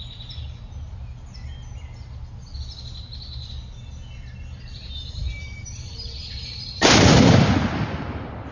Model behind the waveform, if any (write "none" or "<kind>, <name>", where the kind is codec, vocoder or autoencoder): none